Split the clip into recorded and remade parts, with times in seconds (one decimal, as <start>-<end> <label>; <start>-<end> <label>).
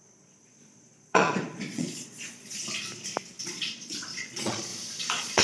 0.0-2.6 remade; 2.6-3.5 recorded; 3.5-5.4 remade